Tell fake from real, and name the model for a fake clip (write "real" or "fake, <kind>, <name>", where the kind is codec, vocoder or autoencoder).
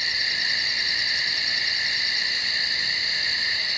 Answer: real